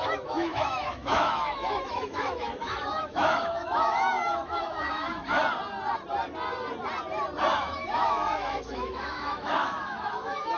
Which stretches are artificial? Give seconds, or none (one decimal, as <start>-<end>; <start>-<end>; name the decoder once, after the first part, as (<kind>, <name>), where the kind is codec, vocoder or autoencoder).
0.0-5.4 (autoencoder, DAC-VAE); 7.6-10.6